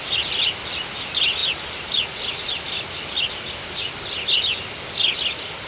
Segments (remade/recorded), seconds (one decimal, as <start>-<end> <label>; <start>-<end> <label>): 0.0-5.7 recorded